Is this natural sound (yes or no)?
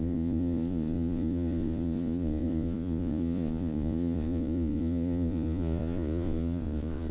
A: no